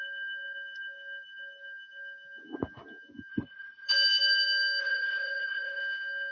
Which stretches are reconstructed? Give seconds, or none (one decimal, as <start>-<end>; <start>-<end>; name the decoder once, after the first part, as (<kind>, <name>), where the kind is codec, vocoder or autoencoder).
3.3-3.9 (codec, HILCodec); 4.8-5.8